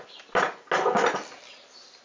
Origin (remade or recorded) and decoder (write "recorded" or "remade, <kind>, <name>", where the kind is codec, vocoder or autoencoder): recorded